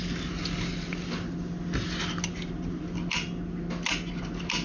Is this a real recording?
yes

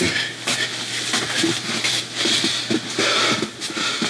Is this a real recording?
yes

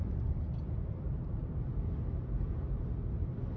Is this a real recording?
yes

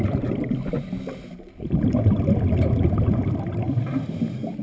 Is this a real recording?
yes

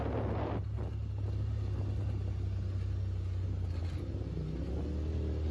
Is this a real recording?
yes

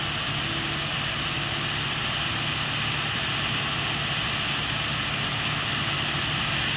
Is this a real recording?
yes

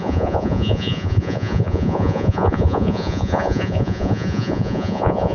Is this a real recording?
no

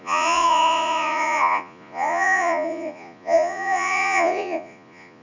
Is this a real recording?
no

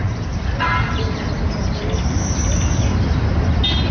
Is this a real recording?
yes